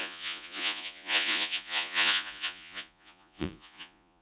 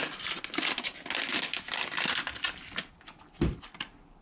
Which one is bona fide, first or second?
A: second